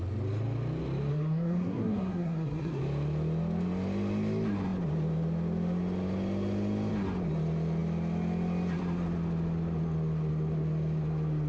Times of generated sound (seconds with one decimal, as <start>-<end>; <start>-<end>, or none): 1.1-2.8